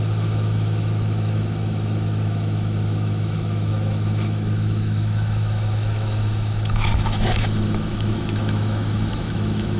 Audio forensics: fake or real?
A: fake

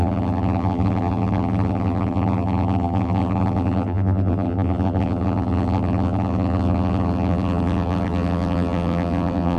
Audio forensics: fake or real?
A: fake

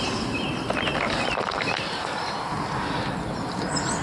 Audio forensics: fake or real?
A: real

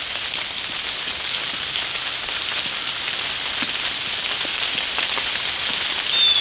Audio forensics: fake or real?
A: real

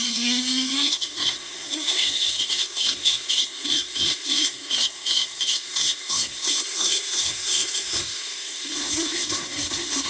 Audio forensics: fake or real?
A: fake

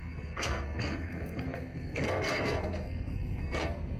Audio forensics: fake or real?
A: fake